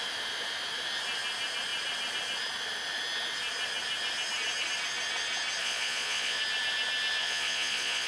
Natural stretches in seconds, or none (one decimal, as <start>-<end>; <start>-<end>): 0.0-5.6; 6.4-7.2